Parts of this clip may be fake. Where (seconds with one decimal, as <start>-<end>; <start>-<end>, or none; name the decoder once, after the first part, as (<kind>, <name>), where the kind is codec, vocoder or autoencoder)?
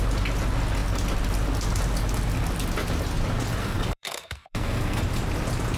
3.6-5.0 (codec, SNAC)